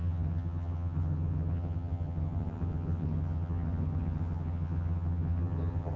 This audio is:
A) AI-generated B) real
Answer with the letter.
A